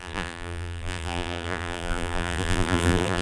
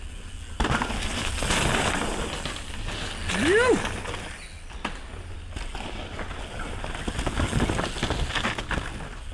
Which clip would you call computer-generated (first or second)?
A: first